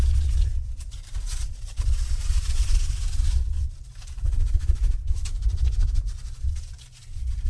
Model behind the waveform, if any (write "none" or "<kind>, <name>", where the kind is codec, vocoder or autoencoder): vocoder, BigVGAN v2